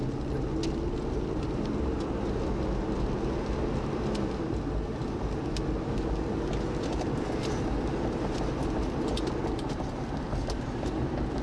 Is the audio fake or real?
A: real